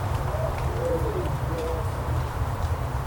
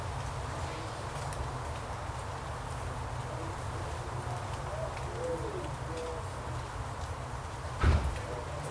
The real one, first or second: second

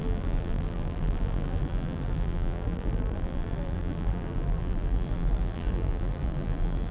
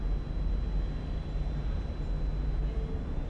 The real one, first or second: second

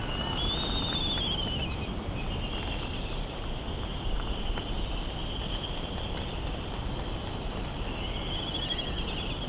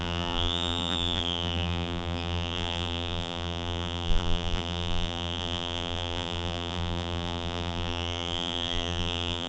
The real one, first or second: first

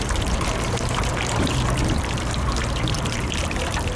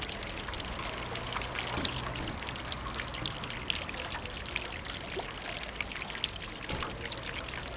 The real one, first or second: second